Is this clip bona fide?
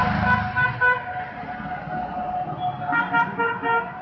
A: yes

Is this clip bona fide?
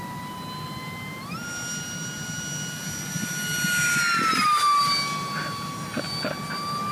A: yes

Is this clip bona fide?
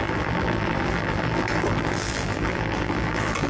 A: no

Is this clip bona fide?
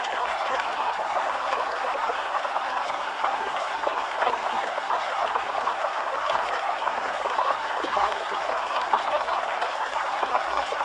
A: no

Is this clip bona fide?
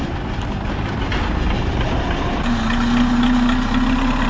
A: yes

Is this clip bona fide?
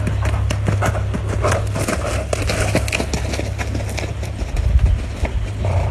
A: yes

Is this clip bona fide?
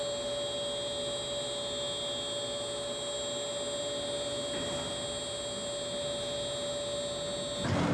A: yes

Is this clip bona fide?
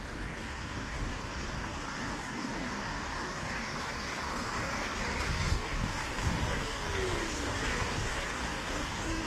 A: no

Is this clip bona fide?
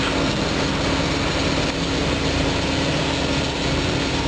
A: yes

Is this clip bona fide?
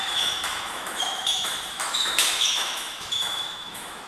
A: no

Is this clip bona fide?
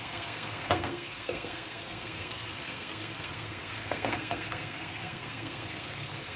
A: no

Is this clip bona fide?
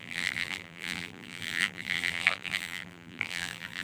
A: no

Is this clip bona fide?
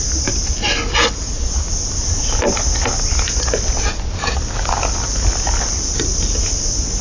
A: yes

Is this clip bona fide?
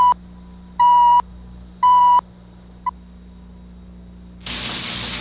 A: yes